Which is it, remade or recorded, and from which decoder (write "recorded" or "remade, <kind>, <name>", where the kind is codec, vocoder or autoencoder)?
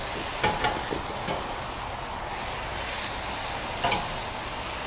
recorded